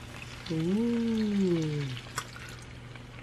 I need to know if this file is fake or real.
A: real